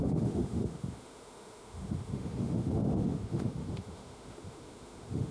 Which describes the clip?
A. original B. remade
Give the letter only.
B